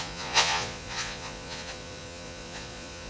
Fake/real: fake